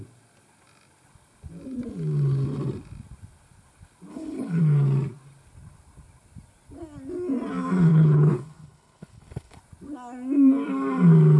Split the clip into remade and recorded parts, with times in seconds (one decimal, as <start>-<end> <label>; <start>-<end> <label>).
0.0-4.1 recorded; 4.1-4.6 remade; 4.6-7.9 recorded; 7.9-9.6 remade; 9.6-11.4 recorded